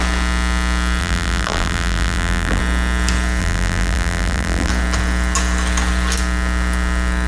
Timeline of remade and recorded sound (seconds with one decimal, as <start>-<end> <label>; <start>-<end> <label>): 0.0-1.0 recorded; 1.0-2.6 remade; 2.6-3.4 recorded; 3.4-4.7 remade; 4.7-7.3 recorded

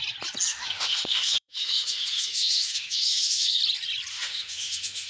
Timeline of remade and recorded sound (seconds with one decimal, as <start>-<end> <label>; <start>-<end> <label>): 0.0-0.5 recorded; 0.5-3.6 remade; 3.6-4.1 recorded; 4.1-5.1 remade

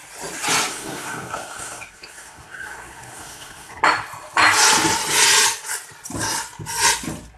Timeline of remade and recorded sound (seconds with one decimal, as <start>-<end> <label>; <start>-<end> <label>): 0.0-0.7 recorded; 0.7-3.8 remade; 3.8-7.4 recorded